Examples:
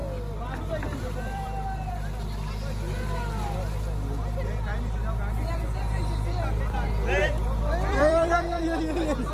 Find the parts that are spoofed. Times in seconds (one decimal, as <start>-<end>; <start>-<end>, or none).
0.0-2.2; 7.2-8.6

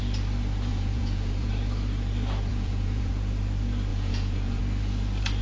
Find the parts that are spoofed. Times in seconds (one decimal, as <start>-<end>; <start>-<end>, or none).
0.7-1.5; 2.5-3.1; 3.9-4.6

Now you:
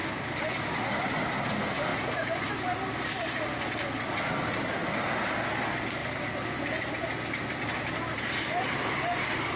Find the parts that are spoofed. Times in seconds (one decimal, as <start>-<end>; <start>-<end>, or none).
0.0-0.5; 1.9-3.1; 6.0-7.0

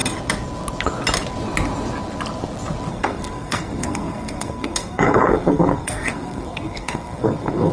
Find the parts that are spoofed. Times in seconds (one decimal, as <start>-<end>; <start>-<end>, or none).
2.9-7.7